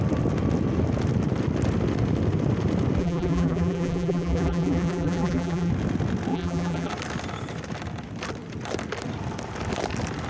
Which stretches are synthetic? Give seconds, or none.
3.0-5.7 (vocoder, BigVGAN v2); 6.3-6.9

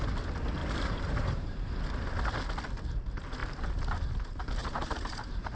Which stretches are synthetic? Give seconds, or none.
0.6-1.8 (vocoder, BigVGAN v2); 4.6-5.6

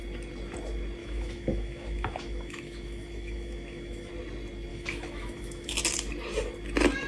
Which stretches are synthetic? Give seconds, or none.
1.0-4.1 (autoencoder, DAC-VAE); 4.7-5.8

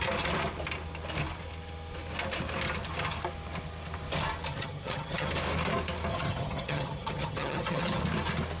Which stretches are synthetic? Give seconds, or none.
4.5-5.3 (vocoder, HiFi-GAN); 6.1-8.0

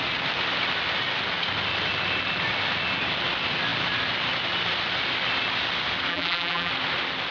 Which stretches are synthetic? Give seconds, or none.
6.1-6.7 (vocoder, BigVGAN v2)

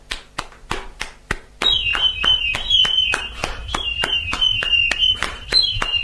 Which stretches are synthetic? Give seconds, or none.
none

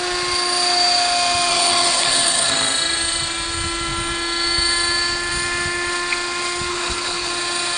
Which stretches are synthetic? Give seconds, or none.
1.5-2.5 (codec, HILCodec); 6.7-7.3

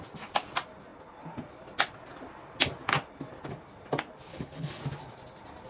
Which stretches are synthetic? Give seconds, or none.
4.3-4.8 (codec, HILCodec)